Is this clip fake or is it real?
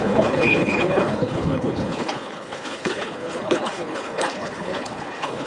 fake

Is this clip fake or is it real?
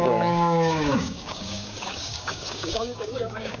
fake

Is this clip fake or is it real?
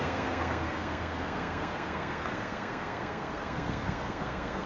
fake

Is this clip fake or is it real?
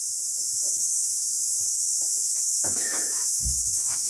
fake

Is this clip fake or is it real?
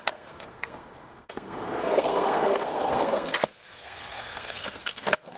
fake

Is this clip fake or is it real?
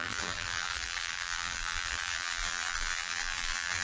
fake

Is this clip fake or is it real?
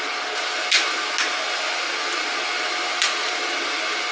real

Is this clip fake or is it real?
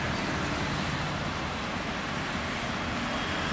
real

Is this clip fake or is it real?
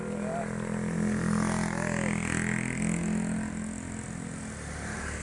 real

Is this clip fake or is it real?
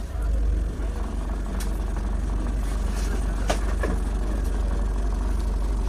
real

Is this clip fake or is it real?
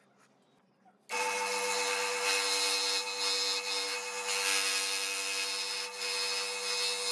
real